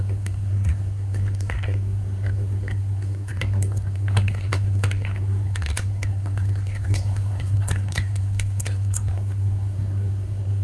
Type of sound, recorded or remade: remade